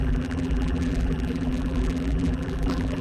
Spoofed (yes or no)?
yes